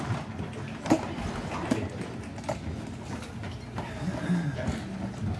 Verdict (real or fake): real